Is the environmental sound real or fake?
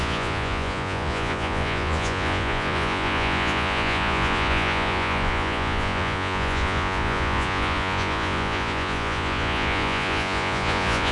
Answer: fake